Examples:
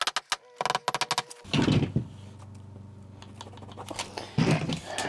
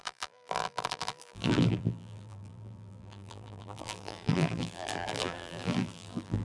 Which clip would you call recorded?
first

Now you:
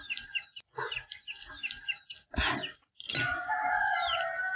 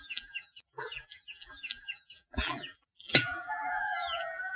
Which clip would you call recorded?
first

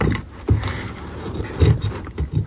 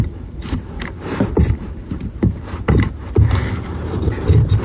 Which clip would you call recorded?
first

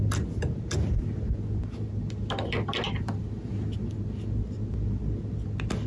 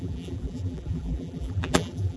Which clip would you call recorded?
first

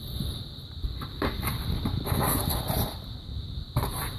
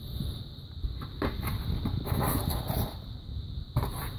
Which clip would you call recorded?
second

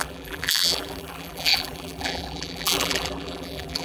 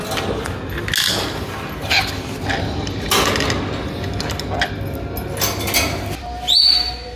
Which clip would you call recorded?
second